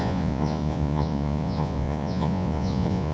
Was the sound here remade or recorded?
remade